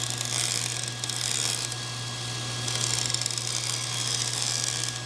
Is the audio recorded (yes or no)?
yes